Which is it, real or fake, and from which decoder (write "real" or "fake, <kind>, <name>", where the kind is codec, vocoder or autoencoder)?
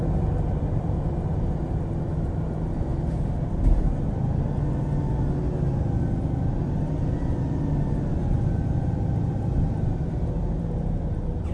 real